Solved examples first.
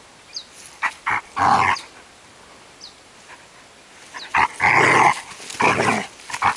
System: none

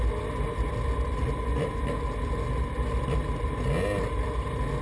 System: none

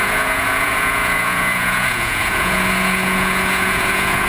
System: vocoder, Vocos